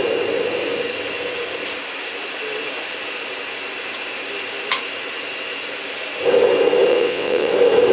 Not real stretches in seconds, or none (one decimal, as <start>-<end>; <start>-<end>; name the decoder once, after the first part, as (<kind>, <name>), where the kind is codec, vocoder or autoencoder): 6.9-7.5 (vocoder, WaveNeXt)